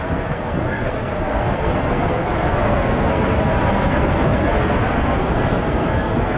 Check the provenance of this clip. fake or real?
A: fake